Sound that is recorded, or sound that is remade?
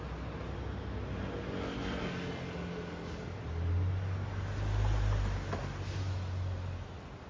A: recorded